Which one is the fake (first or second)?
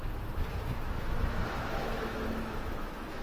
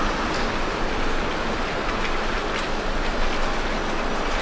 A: first